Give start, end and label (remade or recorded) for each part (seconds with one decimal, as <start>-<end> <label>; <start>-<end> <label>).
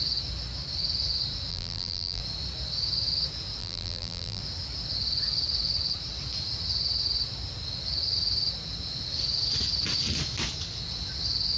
0.0-1.5 recorded; 1.5-2.2 remade; 2.2-3.6 recorded; 3.6-4.4 remade; 4.4-11.6 recorded